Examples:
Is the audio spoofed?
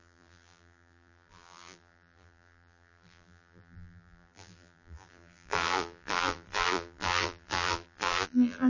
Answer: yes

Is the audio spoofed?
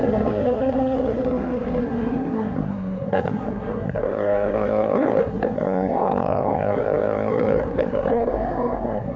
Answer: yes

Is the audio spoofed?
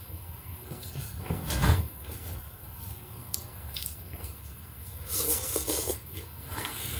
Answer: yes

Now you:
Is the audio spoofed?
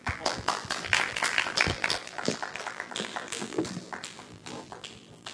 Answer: yes